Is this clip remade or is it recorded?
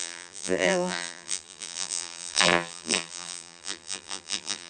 remade